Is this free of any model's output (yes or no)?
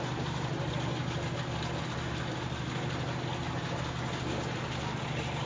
yes